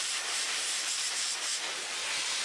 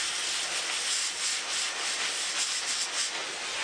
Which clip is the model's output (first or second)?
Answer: first